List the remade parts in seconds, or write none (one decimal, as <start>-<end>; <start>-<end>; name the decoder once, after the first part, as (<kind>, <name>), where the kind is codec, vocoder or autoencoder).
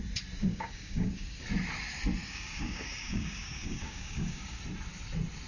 0.5-1.4 (codec, DAC); 2.2-4.6